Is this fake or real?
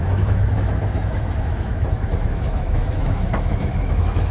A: fake